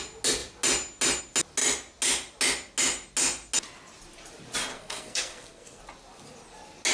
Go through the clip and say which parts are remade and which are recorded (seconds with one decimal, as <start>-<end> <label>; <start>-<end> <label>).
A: 0.0-4.7 recorded; 4.7-5.8 remade; 5.8-6.9 recorded

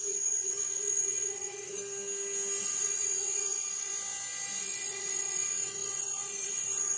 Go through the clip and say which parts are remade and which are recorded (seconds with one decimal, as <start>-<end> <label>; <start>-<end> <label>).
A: 0.0-1.8 remade; 1.8-2.6 recorded; 2.6-3.9 remade; 3.9-4.6 recorded; 4.6-7.0 remade

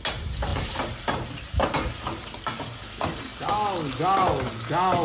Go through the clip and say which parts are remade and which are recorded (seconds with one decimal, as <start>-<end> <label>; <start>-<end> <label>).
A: 0.0-0.5 recorded; 0.5-3.5 remade; 3.5-5.0 recorded

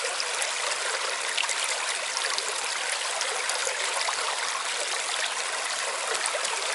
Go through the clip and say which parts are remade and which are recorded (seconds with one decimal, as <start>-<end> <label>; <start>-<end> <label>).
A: 0.0-3.6 recorded; 3.6-4.3 remade; 4.3-6.7 recorded

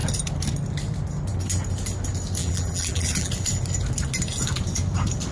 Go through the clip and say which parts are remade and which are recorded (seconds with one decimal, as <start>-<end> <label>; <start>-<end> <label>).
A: 0.0-2.4 recorded; 2.4-3.3 remade; 3.3-5.3 recorded

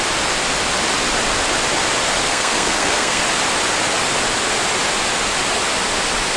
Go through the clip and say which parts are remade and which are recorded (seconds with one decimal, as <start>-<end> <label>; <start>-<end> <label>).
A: 0.0-2.2 recorded; 2.2-3.2 remade; 3.2-6.4 recorded